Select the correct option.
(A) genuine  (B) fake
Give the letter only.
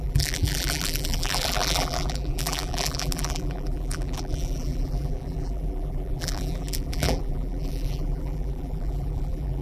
B